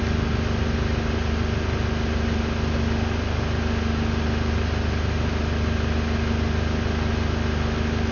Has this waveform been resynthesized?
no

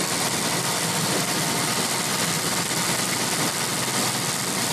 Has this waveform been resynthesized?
no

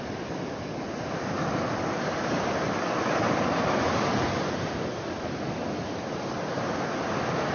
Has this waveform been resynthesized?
no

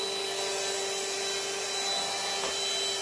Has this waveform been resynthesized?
no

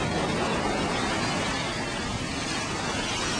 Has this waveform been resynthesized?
no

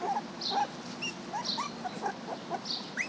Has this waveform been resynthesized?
no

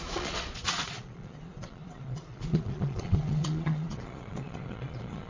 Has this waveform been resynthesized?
yes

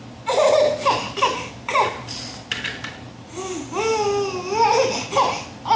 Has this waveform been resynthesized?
no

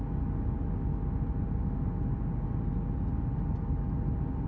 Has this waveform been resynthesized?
no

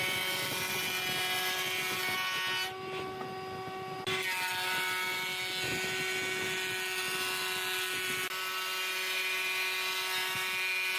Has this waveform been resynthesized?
no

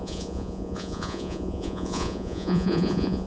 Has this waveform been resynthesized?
yes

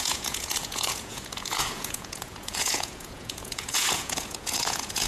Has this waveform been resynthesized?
yes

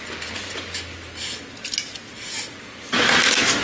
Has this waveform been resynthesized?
no